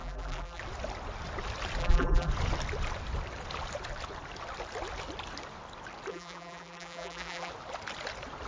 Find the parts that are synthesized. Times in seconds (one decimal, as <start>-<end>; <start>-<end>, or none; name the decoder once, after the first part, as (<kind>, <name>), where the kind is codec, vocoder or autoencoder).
0.0-0.6 (vocoder, BigVGAN v2); 1.8-2.3; 6.1-7.5